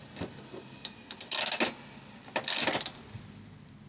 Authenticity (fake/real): real